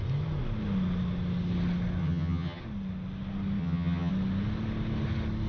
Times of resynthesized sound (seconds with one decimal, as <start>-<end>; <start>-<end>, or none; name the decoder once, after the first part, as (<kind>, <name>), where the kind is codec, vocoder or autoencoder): 2.0-2.6 (vocoder, HiFi-GAN); 3.6-4.1